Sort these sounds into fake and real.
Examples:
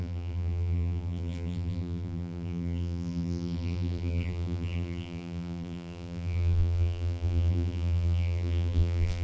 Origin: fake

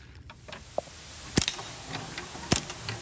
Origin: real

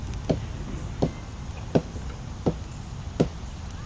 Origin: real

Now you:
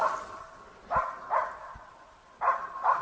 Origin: real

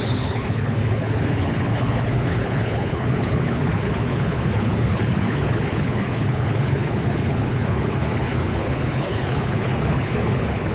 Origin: fake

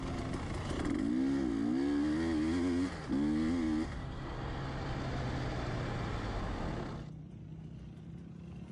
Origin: real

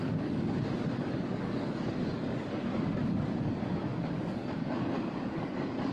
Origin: fake